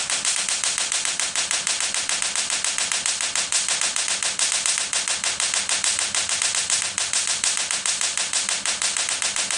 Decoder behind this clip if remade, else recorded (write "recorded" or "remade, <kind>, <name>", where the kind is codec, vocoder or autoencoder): remade, vocoder, BigVGAN v2